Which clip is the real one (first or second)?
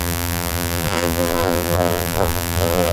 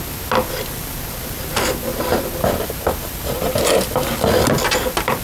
second